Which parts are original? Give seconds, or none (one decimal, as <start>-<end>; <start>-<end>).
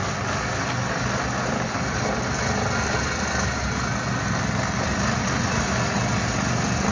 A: 0.0-6.9